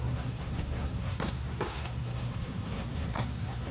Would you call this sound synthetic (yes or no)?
yes